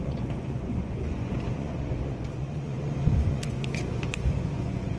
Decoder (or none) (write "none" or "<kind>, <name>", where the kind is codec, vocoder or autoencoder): vocoder, Vocos